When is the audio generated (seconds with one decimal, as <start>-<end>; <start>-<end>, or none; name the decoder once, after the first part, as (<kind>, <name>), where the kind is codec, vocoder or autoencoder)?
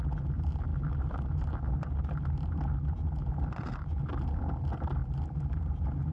none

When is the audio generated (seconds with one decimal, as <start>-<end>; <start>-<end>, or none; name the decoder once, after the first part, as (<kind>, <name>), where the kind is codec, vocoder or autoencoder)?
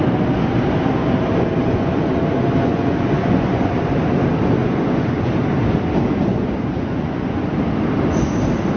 1.6-2.2 (vocoder, Vocos); 2.6-3.7; 4.6-5.3; 6.3-7.5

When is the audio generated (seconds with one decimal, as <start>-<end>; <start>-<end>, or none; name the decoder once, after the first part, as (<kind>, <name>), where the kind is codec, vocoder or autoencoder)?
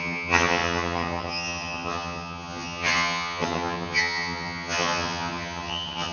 0.0-6.1 (vocoder, HiFi-GAN)